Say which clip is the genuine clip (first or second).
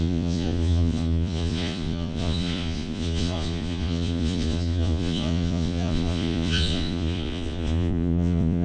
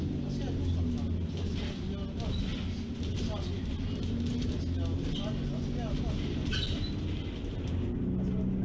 second